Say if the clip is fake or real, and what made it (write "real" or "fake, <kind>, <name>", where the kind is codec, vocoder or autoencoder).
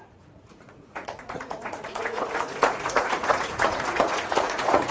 fake, vocoder, Vocos